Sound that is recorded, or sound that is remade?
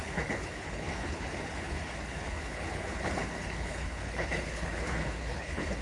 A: remade